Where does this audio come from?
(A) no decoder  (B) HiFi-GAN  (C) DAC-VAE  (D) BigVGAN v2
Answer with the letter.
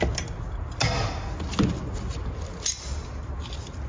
A